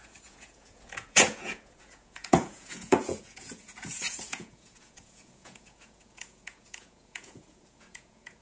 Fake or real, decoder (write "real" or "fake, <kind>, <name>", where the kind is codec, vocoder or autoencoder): fake, vocoder, Vocos